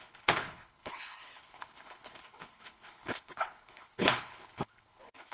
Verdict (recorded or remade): remade